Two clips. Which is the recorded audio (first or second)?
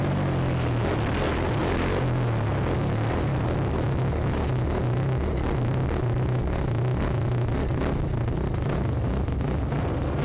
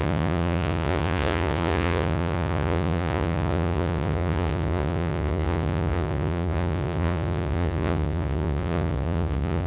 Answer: first